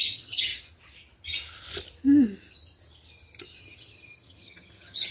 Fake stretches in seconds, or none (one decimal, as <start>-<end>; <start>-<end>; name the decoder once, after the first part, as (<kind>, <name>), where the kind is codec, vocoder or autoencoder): 0.0-0.5 (vocoder, HiFi-GAN); 3.6-5.1